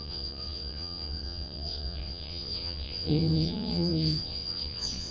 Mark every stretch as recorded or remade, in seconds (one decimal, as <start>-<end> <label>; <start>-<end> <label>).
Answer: 0.0-5.1 remade